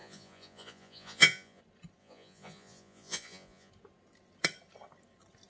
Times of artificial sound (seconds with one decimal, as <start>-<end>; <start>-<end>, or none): 0.0-1.6; 2.0-3.7